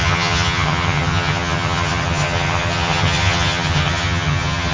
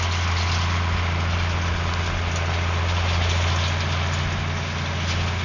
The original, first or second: second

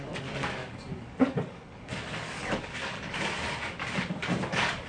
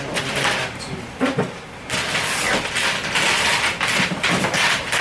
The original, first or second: second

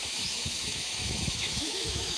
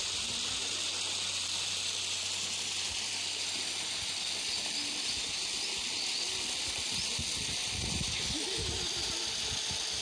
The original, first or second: second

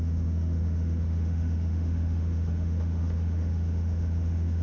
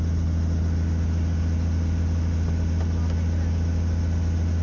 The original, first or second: second